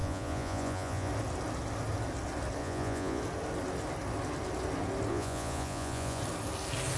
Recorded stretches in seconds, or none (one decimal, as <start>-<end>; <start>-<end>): 1.1-2.6; 3.2-5.1; 6.2-7.0